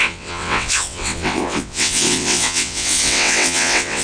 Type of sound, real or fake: fake